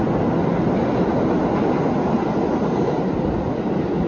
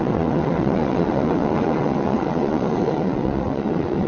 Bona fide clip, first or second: first